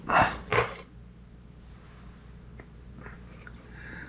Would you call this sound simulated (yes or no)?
no